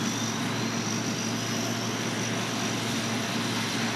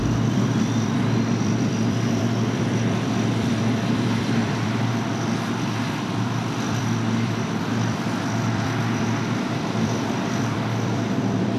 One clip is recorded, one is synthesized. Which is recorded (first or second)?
first